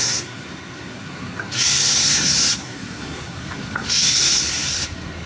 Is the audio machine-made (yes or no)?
yes